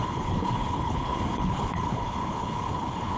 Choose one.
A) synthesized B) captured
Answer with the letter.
A